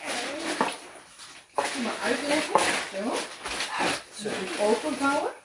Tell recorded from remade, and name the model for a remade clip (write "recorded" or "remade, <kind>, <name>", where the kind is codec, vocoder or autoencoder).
recorded